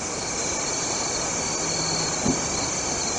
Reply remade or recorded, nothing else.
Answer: recorded